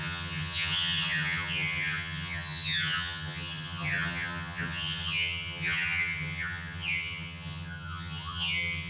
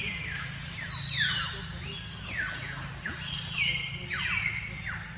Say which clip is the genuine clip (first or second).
second